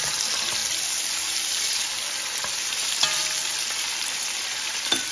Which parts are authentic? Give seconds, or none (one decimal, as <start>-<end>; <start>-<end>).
0.6-3.7